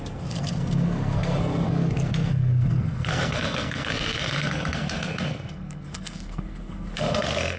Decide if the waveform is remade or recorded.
remade